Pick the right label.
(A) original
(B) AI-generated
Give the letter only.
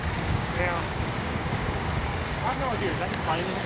B